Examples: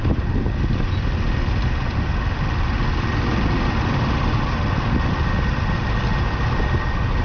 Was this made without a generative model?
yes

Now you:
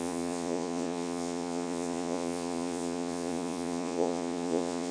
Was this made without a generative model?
no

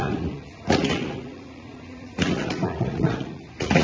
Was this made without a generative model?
no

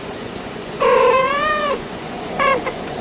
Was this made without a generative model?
no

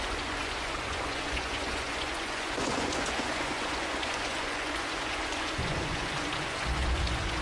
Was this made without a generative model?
no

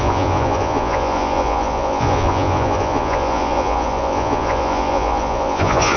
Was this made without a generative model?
no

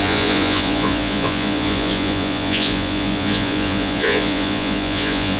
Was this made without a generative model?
no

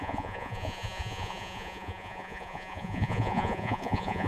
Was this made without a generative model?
no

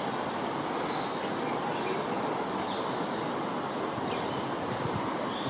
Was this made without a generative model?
yes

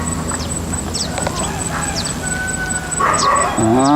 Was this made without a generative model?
yes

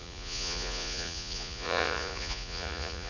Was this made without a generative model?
no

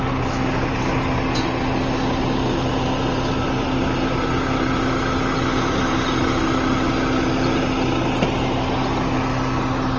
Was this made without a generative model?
yes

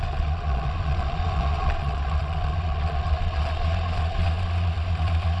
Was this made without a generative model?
no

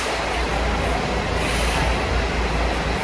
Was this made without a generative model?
yes